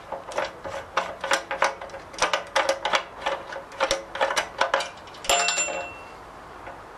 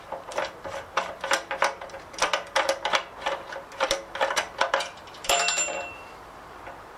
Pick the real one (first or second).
first